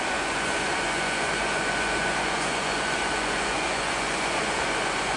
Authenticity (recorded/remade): remade